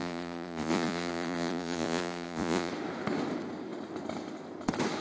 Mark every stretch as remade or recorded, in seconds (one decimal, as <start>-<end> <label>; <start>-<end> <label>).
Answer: 0.0-2.7 remade; 2.7-5.0 recorded